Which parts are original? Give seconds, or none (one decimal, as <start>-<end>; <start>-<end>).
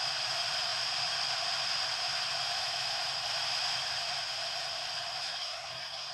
0.0-5.2